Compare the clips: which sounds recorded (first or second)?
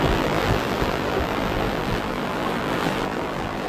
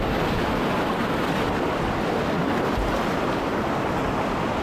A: second